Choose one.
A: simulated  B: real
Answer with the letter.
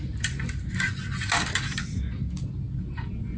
B